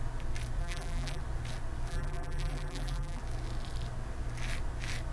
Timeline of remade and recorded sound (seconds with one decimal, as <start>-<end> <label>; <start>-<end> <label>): 0.0-0.6 recorded; 0.6-1.2 remade; 1.2-1.9 recorded; 1.9-3.2 remade; 3.2-5.1 recorded